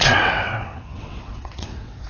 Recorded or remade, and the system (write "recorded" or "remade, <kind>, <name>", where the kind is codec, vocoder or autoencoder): remade, vocoder, WaveNeXt